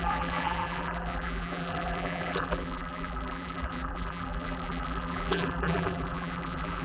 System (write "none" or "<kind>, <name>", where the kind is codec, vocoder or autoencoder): vocoder, BigVGAN v2